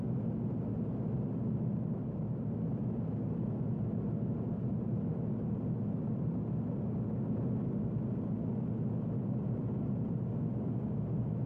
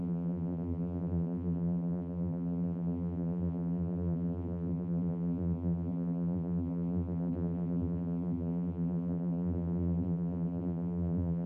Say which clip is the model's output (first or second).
second